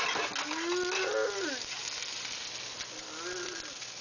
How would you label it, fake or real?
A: real